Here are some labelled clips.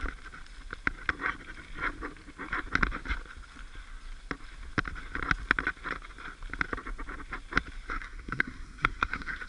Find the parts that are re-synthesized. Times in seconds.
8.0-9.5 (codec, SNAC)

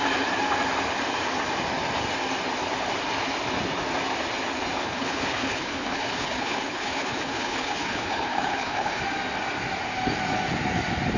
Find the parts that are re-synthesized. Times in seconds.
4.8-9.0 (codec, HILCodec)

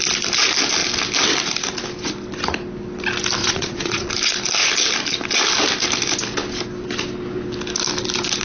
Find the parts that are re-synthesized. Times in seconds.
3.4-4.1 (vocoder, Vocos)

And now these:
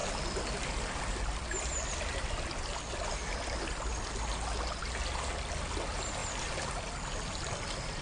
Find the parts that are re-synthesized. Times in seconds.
none

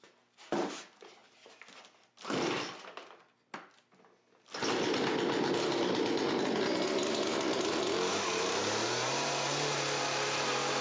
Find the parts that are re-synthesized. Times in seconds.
8.1-10.8 (vocoder, BigVGAN v2)